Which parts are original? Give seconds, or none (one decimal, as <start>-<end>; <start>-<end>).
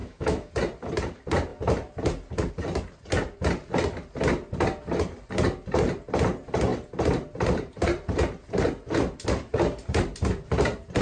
0.5-11.0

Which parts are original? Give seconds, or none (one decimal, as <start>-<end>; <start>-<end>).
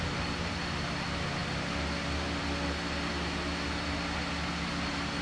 0.0-5.2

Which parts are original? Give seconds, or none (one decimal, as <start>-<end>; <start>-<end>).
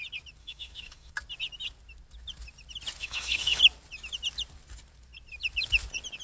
0.0-0.4; 1.1-3.0; 3.6-6.2